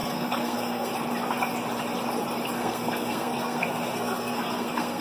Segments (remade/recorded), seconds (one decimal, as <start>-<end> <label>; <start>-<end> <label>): 0.0-0.9 remade; 0.9-2.6 recorded; 2.6-5.0 remade